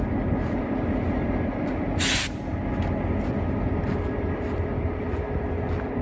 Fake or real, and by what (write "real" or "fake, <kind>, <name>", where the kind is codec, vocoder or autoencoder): real